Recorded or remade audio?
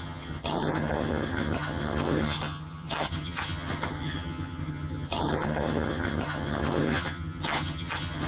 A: remade